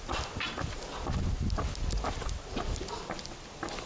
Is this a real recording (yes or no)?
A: yes